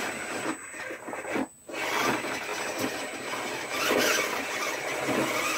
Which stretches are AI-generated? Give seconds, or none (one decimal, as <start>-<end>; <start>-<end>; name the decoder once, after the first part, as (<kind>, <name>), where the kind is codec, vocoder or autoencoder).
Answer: none